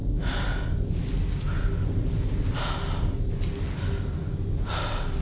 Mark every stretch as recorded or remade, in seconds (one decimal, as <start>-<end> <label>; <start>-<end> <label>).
0.0-5.2 recorded